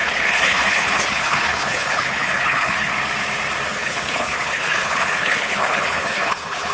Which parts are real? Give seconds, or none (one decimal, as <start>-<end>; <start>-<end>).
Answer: 2.9-3.7